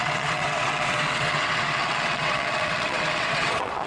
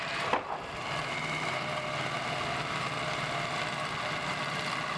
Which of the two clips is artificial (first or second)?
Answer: first